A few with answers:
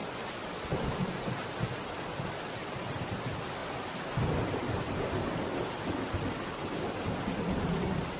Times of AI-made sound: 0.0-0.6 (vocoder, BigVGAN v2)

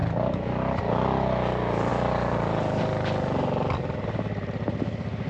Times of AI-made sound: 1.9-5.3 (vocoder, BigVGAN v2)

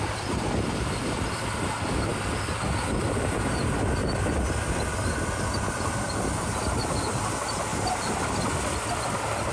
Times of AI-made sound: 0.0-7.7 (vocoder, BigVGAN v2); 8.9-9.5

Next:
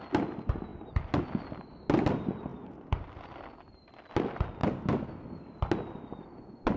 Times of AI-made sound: 0.7-1.2 (vocoder, BigVGAN v2); 2.5-3.2; 4.6-5.1

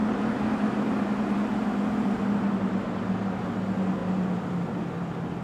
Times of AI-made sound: none

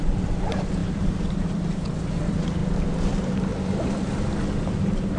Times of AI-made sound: 0.0-2.6 (vocoder, BigVGAN v2); 3.1-3.5; 4.7-5.2